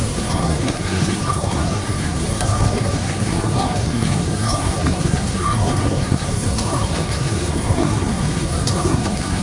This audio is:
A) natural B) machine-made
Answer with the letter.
B